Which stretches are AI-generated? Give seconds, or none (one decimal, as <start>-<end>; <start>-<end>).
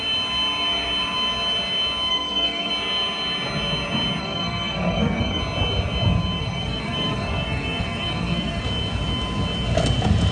2.1-2.7; 4.2-5.4; 6.4-8.6